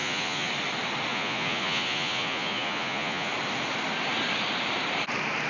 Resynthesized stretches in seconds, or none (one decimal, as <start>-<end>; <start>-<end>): 0.0-0.5; 1.1-3.3